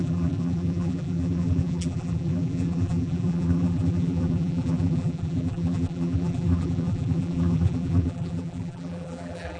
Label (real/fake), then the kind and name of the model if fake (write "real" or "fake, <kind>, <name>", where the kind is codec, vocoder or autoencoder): fake, vocoder, BigVGAN v2